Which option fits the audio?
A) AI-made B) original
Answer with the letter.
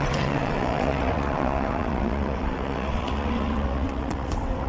A